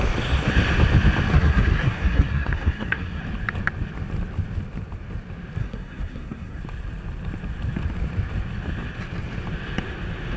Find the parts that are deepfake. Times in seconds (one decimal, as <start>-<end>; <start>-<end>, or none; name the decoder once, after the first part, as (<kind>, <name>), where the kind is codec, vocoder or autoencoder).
1.3-3.2 (codec, SNAC); 5.6-6.6